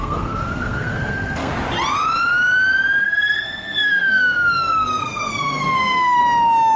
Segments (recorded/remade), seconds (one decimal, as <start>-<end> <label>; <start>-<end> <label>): 0.0-1.5 remade; 1.5-3.0 recorded; 3.0-6.2 remade; 6.2-6.8 recorded